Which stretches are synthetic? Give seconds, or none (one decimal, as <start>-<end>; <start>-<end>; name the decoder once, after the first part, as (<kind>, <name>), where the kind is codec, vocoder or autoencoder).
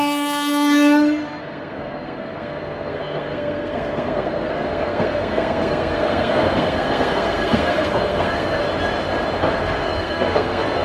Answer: 0.0-8.6 (codec, SNAC); 9.4-10.8